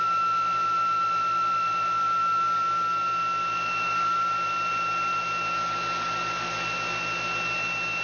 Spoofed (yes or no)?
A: no